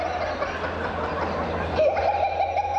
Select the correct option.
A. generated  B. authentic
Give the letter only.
B